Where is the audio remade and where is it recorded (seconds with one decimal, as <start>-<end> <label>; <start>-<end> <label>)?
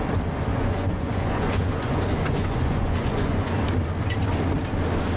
0.0-0.5 recorded; 0.5-3.6 remade; 3.6-5.2 recorded